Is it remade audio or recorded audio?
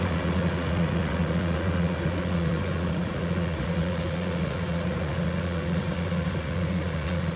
remade